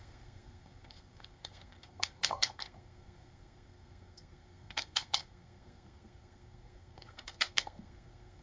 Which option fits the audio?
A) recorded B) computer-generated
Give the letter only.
B